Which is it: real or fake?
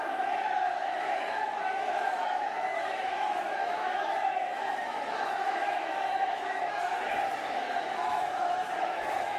fake